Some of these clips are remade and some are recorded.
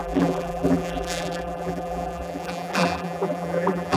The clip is remade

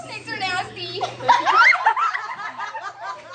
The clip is remade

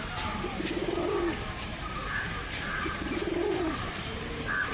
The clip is remade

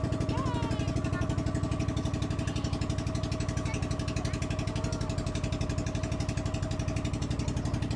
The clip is recorded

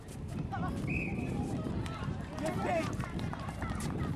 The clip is recorded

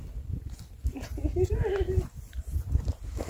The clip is remade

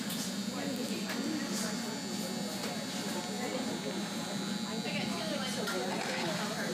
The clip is recorded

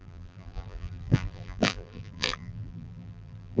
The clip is remade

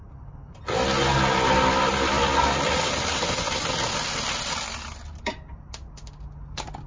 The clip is recorded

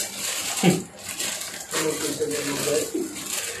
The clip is recorded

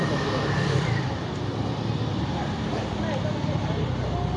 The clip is remade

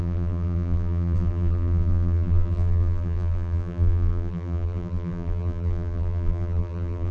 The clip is remade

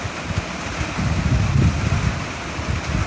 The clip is remade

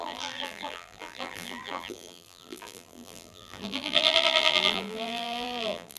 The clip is remade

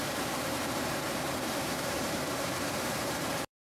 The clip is remade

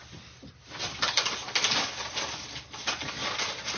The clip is recorded